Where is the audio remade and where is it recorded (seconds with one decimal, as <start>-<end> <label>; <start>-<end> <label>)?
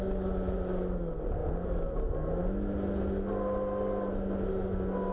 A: 0.0-5.1 recorded